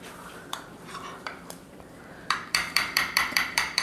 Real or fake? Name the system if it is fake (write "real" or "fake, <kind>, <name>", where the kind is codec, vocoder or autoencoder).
fake, vocoder, BigVGAN v2